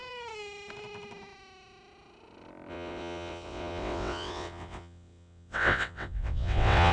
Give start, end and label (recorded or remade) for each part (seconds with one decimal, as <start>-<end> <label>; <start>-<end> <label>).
0.0-2.7 recorded; 2.7-6.9 remade